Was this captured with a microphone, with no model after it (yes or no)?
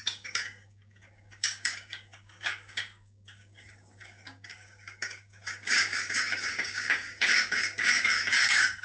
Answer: no